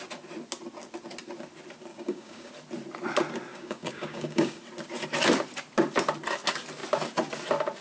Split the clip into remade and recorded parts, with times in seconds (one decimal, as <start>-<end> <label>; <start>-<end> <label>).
0.0-1.9 recorded; 1.9-2.5 remade; 2.5-3.5 recorded; 3.5-4.6 remade; 4.6-7.8 recorded